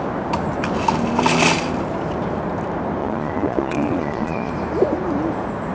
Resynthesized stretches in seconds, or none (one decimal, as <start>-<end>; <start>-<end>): 3.0-4.5